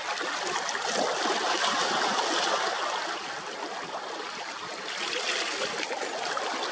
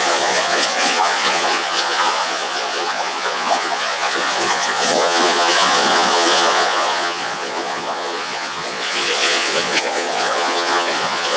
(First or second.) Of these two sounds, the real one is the first